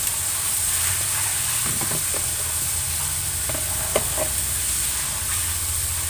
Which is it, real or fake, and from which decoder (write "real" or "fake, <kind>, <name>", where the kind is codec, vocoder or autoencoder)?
real